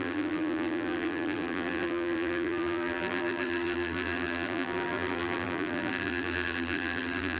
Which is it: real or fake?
fake